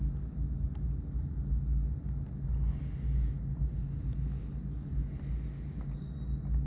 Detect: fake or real real